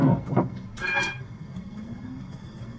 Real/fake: fake